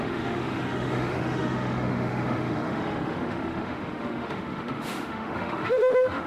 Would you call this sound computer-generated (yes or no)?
yes